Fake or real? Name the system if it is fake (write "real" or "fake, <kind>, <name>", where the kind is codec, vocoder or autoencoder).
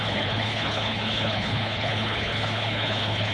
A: fake, codec, HILCodec